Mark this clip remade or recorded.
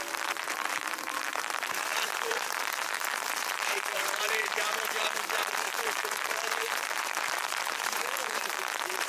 remade